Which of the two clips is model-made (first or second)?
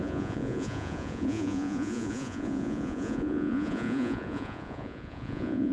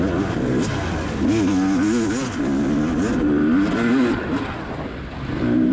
first